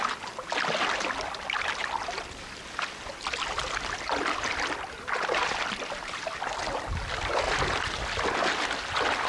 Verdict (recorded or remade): recorded